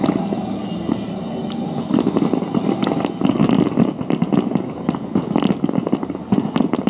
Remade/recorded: recorded